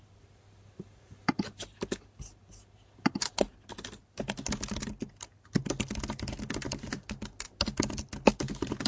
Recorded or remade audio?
recorded